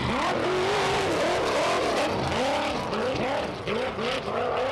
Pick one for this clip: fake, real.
real